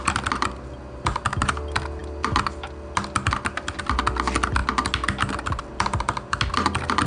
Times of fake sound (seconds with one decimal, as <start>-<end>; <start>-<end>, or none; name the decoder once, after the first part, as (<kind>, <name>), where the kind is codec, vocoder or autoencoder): none